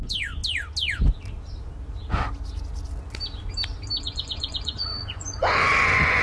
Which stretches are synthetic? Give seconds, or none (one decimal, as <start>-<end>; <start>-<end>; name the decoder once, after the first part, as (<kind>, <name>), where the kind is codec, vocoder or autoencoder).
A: 0.0-0.4 (vocoder, Vocos); 4.0-6.2